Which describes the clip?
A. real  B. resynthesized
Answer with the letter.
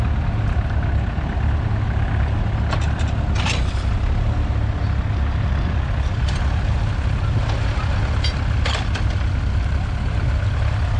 A